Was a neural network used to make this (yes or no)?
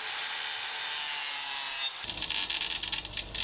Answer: no